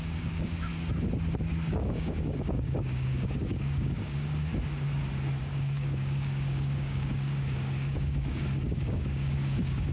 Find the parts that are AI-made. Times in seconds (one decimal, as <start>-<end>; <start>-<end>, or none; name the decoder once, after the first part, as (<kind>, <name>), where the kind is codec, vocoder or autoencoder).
0.0-0.7 (codec, DAC); 1.7-4.5; 5.4-9.9